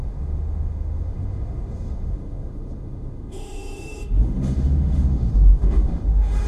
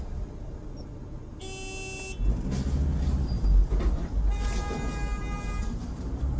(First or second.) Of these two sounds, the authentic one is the second